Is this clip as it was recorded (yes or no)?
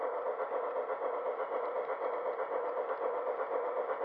yes